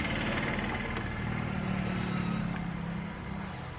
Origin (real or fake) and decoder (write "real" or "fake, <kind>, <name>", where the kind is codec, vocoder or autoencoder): real